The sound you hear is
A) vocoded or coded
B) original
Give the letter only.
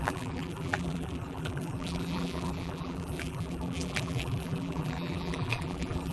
A